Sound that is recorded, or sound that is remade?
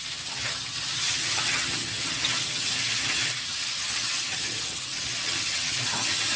remade